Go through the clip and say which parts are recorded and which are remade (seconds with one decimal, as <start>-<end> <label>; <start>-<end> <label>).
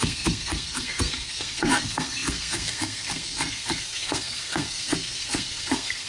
0.0-6.1 remade